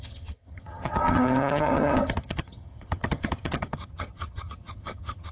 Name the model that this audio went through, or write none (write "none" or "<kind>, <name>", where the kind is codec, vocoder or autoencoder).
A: vocoder, HiFi-GAN